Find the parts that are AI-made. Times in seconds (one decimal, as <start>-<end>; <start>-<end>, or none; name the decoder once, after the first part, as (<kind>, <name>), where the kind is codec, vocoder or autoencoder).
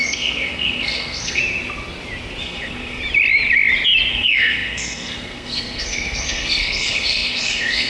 0.0-1.4 (codec, SNAC); 2.4-3.0; 4.1-7.9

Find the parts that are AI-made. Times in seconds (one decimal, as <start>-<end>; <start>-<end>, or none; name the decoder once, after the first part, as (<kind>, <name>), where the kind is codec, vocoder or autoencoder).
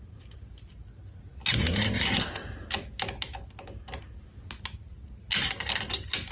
none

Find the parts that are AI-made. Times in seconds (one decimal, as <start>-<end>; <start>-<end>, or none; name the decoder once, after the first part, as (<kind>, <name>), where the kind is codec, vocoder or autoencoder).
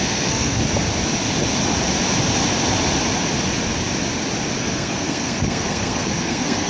0.0-0.6 (codec, SNAC); 4.6-6.7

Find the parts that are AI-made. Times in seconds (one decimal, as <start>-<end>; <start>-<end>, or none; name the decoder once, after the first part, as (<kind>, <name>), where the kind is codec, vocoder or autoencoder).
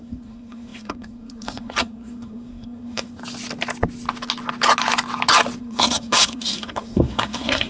0.0-3.2 (codec, SNAC); 5.6-7.7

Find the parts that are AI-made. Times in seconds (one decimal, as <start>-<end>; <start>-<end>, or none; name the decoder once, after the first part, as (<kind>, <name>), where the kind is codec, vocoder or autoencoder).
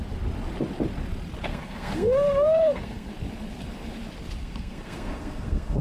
1.5-3.1 (codec, SNAC); 4.4-5.8